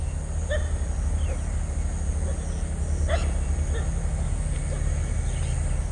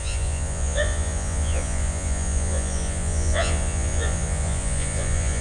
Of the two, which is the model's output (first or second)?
second